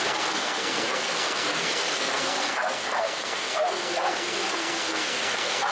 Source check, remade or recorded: remade